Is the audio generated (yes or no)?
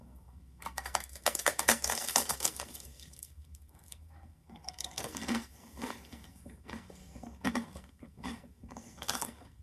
yes